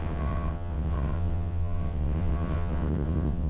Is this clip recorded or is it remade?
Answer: remade